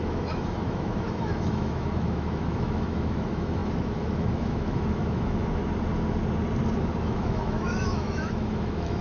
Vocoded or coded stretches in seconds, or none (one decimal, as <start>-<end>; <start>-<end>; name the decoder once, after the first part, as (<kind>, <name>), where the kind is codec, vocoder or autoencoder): 0.0-5.6 (autoencoder, DAC-VAE); 7.0-9.0